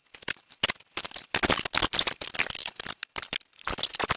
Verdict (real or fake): real